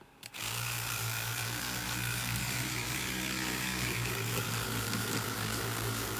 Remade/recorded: remade